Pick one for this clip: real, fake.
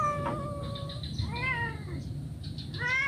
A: real